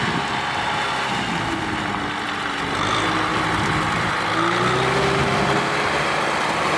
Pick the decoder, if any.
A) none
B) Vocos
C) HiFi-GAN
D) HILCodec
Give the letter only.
A